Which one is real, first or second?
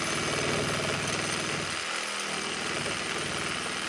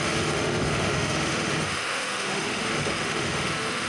first